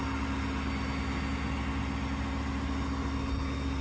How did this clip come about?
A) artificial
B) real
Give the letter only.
B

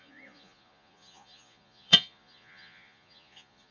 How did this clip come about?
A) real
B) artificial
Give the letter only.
B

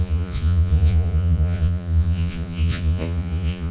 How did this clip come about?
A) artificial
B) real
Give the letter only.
A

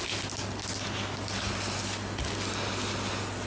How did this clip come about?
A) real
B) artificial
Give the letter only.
A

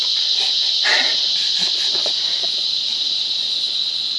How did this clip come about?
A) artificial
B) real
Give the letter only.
B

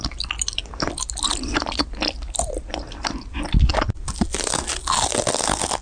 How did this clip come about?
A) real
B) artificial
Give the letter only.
A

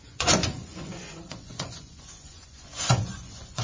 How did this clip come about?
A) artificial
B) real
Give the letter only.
A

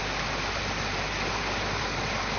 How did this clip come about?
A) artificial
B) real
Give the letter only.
B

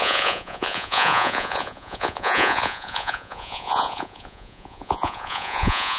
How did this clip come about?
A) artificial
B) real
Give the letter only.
A